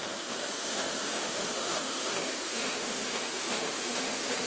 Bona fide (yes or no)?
no